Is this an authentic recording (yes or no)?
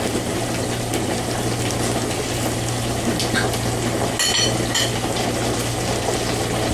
yes